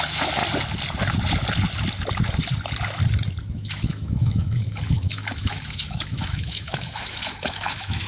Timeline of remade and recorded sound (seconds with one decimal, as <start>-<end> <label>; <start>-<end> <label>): 0.0-0.4 remade; 0.4-3.5 recorded; 3.5-8.1 remade

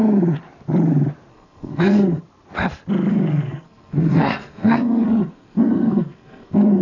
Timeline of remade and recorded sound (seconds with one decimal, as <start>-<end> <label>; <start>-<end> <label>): 0.0-1.3 recorded; 1.3-2.2 remade; 2.2-3.1 recorded; 3.1-6.8 remade

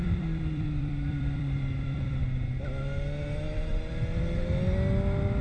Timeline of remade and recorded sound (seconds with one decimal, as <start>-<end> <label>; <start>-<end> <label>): 0.0-2.2 remade; 2.2-5.4 recorded

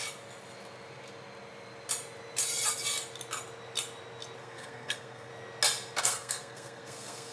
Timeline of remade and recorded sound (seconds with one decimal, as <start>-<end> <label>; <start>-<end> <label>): 0.0-4.4 recorded; 4.4-5.3 remade; 5.3-6.0 recorded; 6.0-7.3 remade

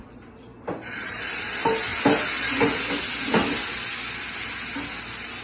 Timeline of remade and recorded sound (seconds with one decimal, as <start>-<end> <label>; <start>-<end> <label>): 0.0-5.4 recorded